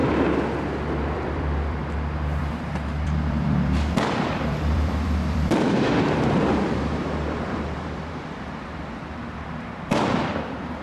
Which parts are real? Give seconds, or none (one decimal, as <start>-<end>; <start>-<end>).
0.0-1.0; 1.8-2.4